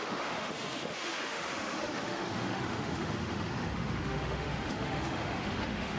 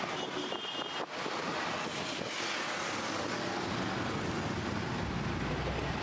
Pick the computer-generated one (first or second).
first